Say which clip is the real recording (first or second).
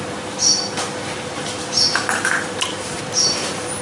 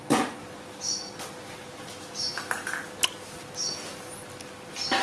second